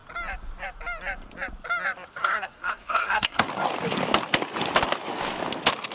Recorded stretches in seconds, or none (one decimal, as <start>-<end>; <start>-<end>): 0.0-2.2; 3.5-5.9